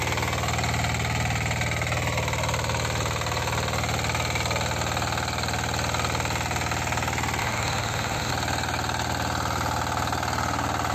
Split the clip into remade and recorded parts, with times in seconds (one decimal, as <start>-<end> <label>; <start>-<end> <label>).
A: 0.0-7.4 recorded; 7.4-8.3 remade; 8.3-10.9 recorded